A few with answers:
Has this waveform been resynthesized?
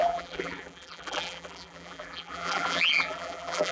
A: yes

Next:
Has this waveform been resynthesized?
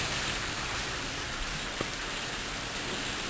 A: no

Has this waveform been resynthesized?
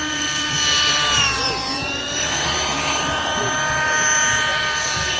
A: yes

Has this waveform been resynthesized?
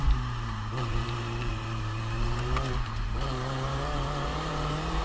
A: yes